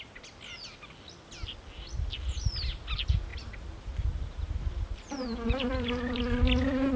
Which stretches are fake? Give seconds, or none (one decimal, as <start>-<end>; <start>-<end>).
3.3-6.2